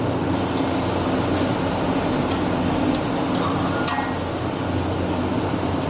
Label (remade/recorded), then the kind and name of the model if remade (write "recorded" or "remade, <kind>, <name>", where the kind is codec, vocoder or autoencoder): recorded